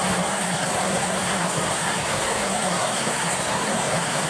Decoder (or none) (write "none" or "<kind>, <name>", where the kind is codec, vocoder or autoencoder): codec, SNAC